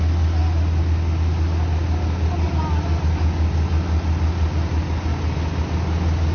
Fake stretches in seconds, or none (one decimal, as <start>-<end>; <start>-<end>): none